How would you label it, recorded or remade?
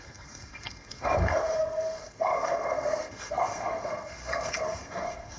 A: remade